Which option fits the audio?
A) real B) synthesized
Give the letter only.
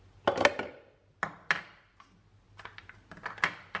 A